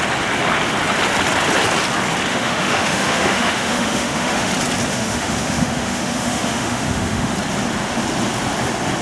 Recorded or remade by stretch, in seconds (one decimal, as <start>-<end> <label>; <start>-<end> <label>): 0.0-2.3 recorded; 2.3-4.5 remade; 4.5-4.9 recorded; 4.9-7.3 remade; 7.3-9.0 recorded